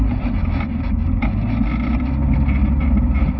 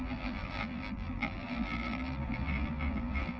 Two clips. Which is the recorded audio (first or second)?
first